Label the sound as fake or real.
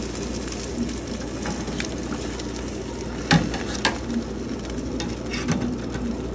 real